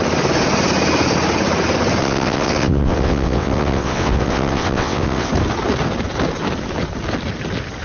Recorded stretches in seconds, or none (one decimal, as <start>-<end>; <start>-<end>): 0.0-2.0; 5.3-7.8